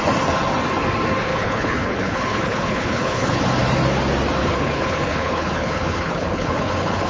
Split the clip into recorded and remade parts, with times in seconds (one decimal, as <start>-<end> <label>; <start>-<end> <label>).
0.0-1.3 recorded; 1.3-3.4 remade; 3.4-4.4 recorded; 4.4-7.1 remade